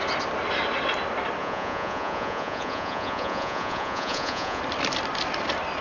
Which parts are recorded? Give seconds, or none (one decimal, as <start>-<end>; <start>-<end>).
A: 0.0-1.4; 4.6-5.8